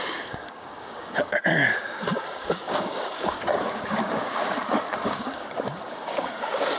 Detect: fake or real fake